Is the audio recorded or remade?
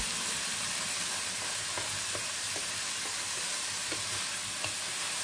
recorded